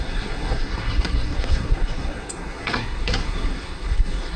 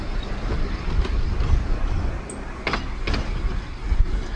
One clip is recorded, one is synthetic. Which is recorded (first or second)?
second